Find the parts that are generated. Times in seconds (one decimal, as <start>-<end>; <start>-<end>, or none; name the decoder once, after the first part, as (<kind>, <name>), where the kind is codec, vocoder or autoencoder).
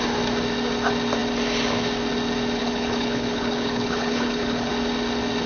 2.6-4.7 (codec, HILCodec)